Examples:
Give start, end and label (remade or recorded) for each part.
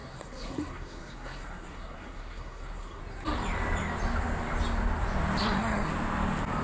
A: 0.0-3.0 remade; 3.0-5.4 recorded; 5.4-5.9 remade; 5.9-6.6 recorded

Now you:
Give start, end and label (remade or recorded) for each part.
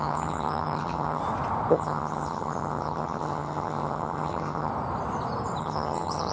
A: 0.0-1.2 remade; 1.2-1.7 recorded; 1.7-4.7 remade; 4.7-5.6 recorded; 5.6-6.3 remade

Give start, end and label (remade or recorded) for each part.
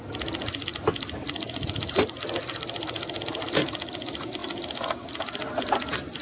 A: 0.0-6.2 recorded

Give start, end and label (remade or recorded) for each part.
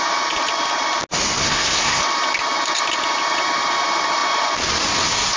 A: 0.0-1.4 recorded; 1.4-2.0 remade; 2.0-5.4 recorded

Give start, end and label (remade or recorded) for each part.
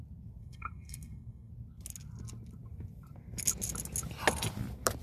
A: 0.0-0.4 recorded; 0.4-1.5 remade; 1.5-5.0 recorded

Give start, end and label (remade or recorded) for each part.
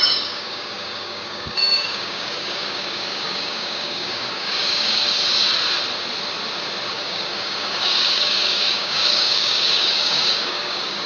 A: 0.0-5.0 remade; 5.0-6.9 recorded; 6.9-11.1 remade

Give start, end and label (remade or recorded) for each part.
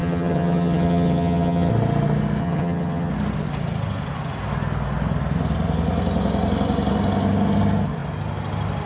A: 0.0-1.7 remade; 1.7-2.4 recorded; 2.4-3.1 remade; 3.1-8.9 recorded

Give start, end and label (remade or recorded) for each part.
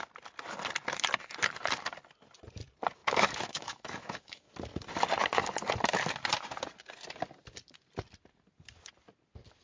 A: 0.0-3.0 recorded; 3.0-4.5 remade; 4.5-9.6 recorded